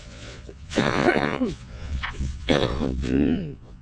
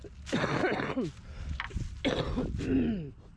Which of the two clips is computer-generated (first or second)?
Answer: first